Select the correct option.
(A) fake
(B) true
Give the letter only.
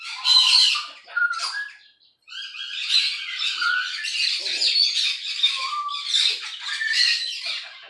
B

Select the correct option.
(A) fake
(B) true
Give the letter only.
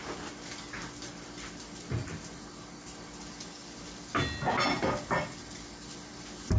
B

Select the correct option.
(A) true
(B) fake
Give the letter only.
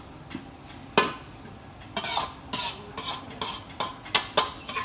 A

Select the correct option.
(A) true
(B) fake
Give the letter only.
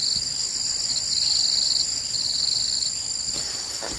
A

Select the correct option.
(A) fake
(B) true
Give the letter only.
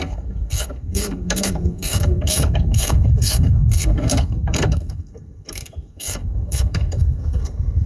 A